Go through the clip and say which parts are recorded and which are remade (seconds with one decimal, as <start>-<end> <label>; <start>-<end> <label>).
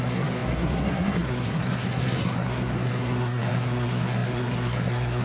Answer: 0.0-5.2 remade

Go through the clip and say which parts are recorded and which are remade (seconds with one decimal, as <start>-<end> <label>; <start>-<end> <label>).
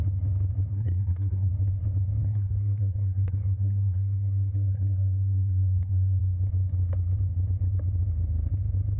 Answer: 0.0-0.7 recorded; 0.7-1.5 remade; 1.5-2.2 recorded; 2.2-6.2 remade; 6.2-9.0 recorded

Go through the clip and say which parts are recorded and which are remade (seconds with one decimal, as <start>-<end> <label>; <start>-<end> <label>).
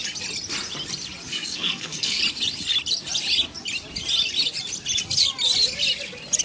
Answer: 0.0-1.3 recorded; 1.3-2.2 remade; 2.2-6.4 recorded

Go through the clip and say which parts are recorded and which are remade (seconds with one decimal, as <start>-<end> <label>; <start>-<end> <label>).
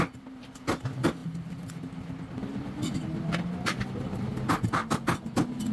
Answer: 0.0-1.2 recorded; 1.2-1.8 remade; 1.8-4.8 recorded; 4.8-5.7 remade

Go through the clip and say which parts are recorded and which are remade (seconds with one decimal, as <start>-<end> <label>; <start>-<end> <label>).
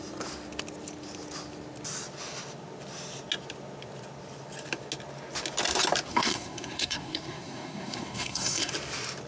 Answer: 0.0-6.1 recorded; 6.1-8.7 remade; 8.7-9.3 recorded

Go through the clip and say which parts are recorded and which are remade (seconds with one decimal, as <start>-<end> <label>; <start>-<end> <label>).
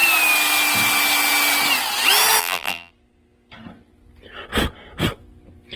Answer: 0.0-2.4 recorded; 2.4-2.9 remade; 2.9-5.8 recorded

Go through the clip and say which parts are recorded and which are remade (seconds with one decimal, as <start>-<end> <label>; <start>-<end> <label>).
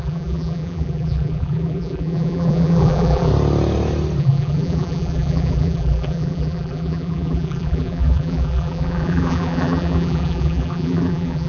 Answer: 0.0-3.3 remade; 3.3-4.2 recorded; 4.2-11.5 remade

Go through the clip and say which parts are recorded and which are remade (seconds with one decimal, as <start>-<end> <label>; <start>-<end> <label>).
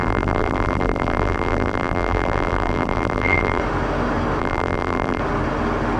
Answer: 0.0-3.6 remade; 3.6-4.4 recorded; 4.4-5.2 remade; 5.2-6.0 recorded